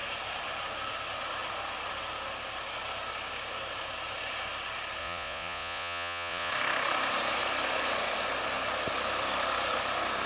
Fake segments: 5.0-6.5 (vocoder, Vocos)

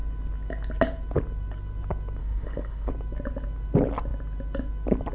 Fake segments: 2.2-2.9 (codec, HILCodec)

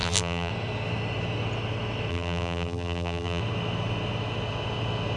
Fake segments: 0.0-0.5 (vocoder, BigVGAN v2); 2.1-3.4

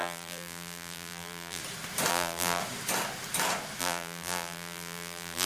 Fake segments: 0.0-1.6 (vocoder, BigVGAN v2); 2.1-2.6; 3.8-5.5